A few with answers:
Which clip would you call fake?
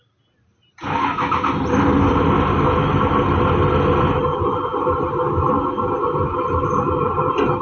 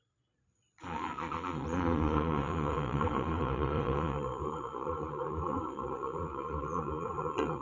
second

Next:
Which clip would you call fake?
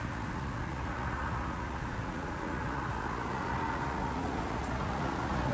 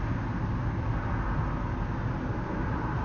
first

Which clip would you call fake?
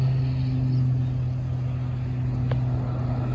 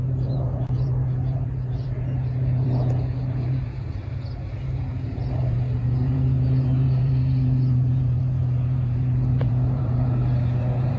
second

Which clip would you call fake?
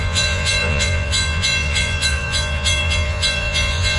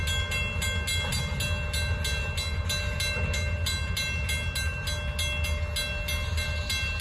first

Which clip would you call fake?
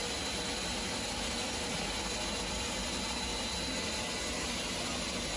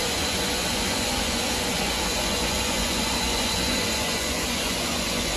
second